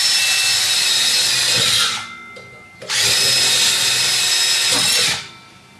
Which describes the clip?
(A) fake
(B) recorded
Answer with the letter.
B